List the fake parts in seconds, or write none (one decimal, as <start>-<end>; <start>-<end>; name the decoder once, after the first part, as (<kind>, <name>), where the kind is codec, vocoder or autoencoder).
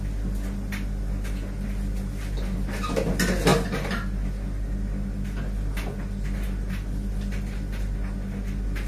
none